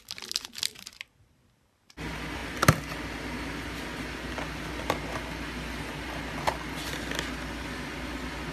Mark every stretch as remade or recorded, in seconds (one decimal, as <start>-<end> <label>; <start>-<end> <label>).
0.0-8.5 recorded

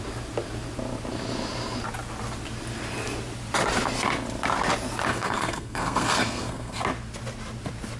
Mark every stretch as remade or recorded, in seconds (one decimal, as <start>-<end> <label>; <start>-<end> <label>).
0.0-5.1 recorded; 5.1-6.8 remade; 6.8-8.0 recorded

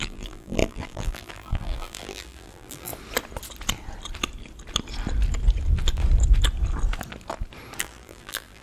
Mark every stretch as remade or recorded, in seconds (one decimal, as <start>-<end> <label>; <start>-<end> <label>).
0.0-2.9 remade; 2.9-7.8 recorded; 7.8-8.6 remade

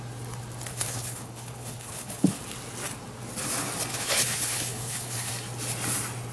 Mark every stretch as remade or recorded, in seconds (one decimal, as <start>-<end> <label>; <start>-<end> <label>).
0.0-0.7 recorded; 0.7-2.4 remade; 2.4-3.9 recorded; 3.9-5.3 remade; 5.3-6.3 recorded

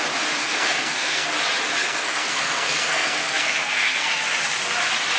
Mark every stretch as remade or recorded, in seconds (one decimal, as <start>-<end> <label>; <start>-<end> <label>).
0.0-0.4 recorded; 0.4-1.3 remade; 1.3-1.8 recorded; 1.8-4.1 remade; 4.1-5.2 recorded

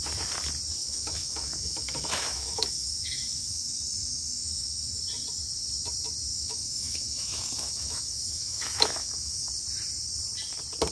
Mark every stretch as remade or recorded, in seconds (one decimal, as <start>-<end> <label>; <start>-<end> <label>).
0.0-0.8 recorded; 0.8-5.0 remade; 5.0-6.3 recorded; 6.3-9.5 remade; 9.5-10.9 recorded

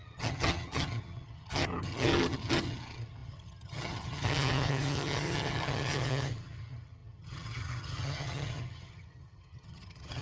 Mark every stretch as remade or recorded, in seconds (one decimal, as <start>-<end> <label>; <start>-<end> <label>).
0.0-10.2 remade